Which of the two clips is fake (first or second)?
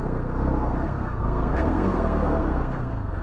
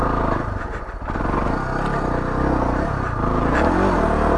first